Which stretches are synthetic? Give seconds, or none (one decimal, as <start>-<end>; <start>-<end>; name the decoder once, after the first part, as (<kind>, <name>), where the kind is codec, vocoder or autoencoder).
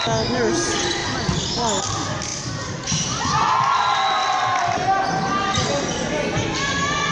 none